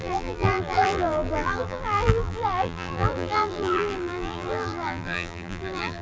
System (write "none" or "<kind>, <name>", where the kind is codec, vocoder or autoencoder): vocoder, BigVGAN v2